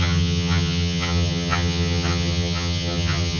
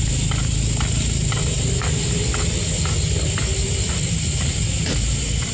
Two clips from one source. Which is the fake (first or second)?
first